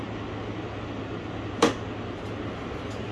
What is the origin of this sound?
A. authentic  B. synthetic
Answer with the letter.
A